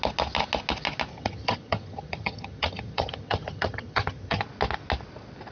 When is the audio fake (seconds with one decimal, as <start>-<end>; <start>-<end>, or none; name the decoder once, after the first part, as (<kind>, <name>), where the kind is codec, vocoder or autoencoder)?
1.1-4.4 (vocoder, HiFi-GAN)